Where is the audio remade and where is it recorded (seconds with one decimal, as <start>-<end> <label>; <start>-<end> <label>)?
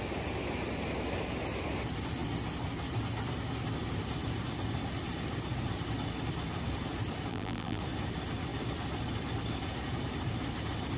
0.0-7.3 recorded; 7.3-7.8 remade; 7.8-11.0 recorded